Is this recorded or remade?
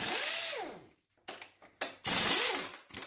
recorded